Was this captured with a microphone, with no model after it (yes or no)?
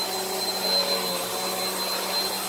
yes